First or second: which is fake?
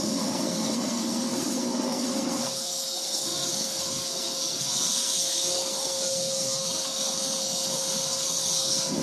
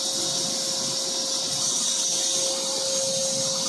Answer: first